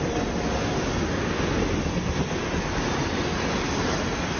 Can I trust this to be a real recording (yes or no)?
yes